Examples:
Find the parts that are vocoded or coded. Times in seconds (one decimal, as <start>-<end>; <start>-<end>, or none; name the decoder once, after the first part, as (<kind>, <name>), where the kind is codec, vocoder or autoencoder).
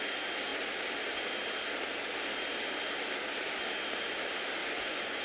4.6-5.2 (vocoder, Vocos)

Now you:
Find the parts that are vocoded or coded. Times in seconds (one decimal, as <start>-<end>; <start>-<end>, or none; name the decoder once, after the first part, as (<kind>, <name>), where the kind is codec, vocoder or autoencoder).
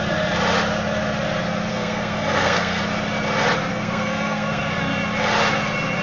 1.7-2.8 (codec, SNAC); 3.7-4.7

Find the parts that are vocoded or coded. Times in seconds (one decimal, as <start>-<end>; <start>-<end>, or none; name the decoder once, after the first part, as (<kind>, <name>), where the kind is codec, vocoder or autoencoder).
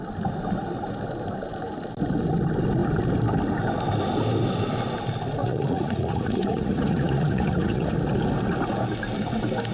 5.4-7.9 (vocoder, Vocos)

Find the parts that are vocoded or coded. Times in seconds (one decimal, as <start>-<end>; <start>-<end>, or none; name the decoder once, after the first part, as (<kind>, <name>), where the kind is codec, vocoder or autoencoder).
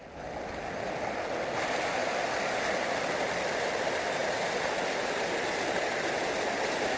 none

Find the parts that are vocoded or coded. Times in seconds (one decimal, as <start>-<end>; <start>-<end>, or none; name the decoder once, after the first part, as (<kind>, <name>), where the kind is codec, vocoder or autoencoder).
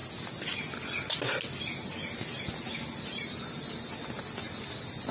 none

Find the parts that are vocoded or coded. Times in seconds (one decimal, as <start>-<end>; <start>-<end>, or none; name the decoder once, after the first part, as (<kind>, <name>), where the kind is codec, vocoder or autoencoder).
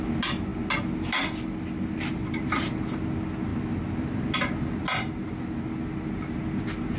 none